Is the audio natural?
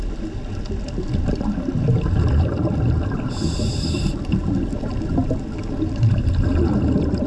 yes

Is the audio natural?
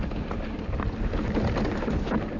yes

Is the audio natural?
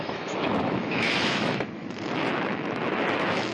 no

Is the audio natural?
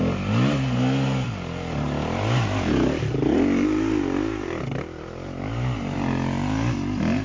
yes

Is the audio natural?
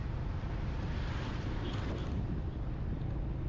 yes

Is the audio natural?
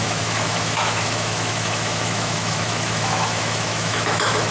no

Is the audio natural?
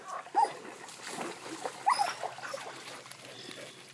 yes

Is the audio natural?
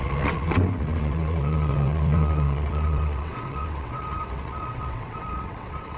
no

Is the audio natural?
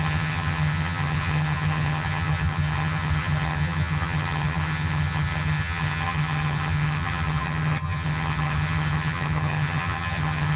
no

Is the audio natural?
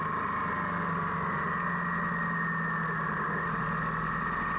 yes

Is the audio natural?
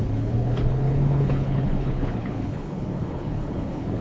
no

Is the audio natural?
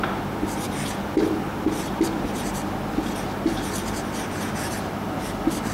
yes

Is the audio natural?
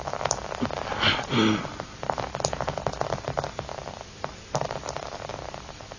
yes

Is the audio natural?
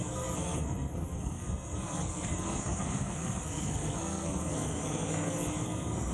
no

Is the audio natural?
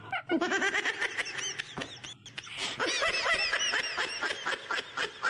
yes